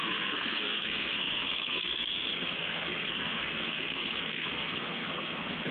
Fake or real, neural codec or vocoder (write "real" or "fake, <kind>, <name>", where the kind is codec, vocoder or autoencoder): fake, codec, SNAC